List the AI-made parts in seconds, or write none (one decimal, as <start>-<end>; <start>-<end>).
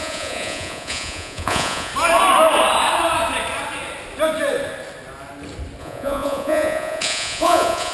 0.0-1.9; 5.8-7.9